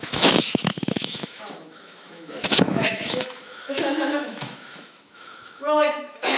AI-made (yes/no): yes